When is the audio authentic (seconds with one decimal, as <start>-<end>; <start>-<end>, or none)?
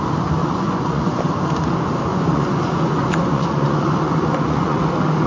0.0-0.4; 1.2-2.1; 4.8-5.3